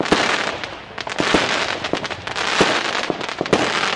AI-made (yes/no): no